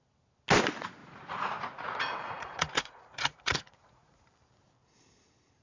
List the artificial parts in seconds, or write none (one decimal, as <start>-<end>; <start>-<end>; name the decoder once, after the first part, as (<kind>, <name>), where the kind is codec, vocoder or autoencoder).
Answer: 1.0-4.2 (vocoder, Vocos)